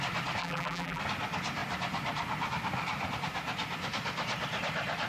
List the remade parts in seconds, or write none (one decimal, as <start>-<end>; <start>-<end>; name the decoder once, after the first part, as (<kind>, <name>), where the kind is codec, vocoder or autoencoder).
0.4-1.0 (vocoder, BigVGAN v2)

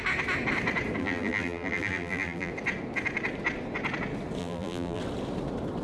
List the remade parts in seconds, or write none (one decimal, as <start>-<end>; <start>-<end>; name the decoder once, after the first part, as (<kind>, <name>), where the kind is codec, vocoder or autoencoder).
1.0-2.5 (vocoder, BigVGAN v2); 4.4-5.0

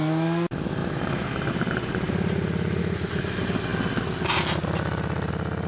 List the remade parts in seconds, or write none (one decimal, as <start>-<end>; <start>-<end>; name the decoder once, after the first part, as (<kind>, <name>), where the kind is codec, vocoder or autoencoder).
0.8-2.8 (vocoder, BigVGAN v2)